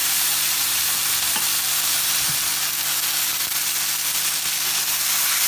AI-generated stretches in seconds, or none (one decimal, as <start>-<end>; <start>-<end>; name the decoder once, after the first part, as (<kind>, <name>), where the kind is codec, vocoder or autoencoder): 0.0-2.3 (vocoder, BigVGAN v2)